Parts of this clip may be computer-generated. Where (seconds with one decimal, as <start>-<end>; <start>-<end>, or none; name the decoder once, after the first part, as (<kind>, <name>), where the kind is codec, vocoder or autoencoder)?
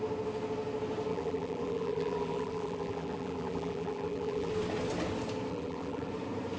1.1-4.5 (vocoder, BigVGAN v2); 5.5-6.1